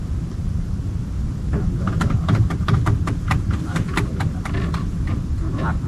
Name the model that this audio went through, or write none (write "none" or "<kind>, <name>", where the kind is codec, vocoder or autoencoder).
none